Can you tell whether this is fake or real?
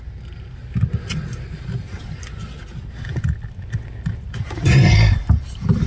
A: real